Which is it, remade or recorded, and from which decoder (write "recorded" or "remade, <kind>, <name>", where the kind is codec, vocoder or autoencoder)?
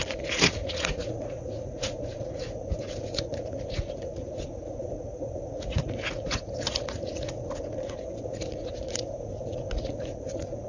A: remade, vocoder, Vocos